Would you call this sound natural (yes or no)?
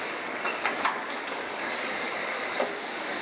no